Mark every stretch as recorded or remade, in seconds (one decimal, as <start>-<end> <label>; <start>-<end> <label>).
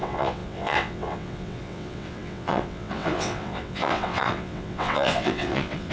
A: 0.0-5.9 remade